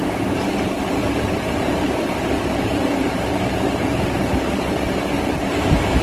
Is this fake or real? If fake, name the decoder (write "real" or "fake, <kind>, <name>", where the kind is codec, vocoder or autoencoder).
fake, vocoder, BigVGAN v2